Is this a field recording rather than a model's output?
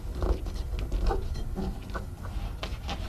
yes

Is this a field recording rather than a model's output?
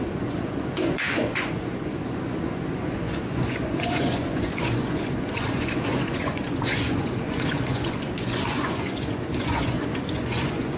no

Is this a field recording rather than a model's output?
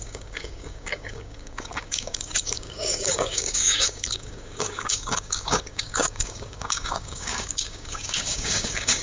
no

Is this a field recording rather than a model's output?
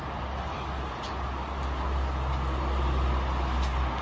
yes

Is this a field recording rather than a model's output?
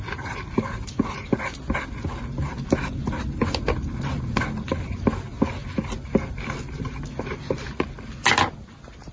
yes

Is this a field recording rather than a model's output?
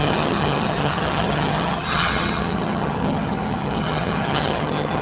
no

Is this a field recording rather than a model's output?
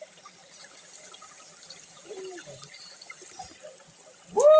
yes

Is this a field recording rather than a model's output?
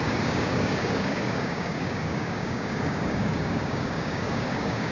no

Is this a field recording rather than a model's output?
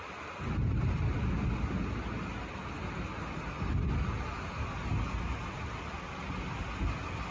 yes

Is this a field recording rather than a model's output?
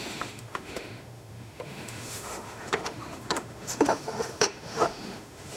no